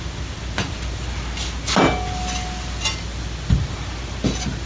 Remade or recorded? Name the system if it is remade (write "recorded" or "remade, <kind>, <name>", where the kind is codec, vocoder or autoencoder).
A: recorded